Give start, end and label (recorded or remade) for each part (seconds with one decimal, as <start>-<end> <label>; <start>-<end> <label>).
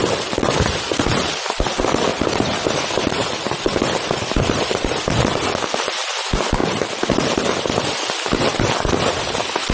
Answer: 0.0-2.1 recorded; 2.1-4.6 remade; 4.6-9.7 recorded